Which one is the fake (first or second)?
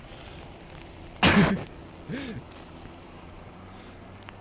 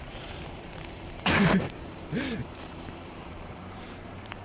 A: second